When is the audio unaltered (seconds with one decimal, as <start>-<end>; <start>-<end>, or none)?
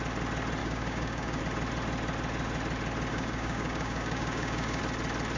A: 0.0-0.6; 1.4-3.1; 4.8-5.4